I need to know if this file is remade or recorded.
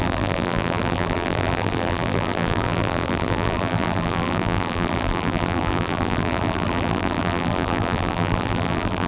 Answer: remade